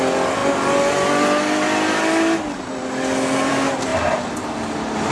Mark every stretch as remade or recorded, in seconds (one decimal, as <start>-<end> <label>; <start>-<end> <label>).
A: 0.0-5.1 recorded